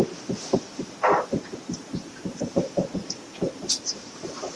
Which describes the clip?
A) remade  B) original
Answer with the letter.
A